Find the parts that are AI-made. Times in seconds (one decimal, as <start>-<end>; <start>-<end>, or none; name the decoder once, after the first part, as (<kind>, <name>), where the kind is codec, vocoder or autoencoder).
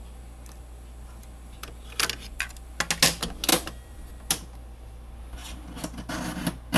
3.5-4.1 (vocoder, BigVGAN v2)